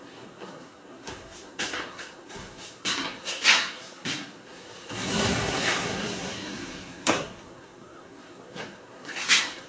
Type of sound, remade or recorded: remade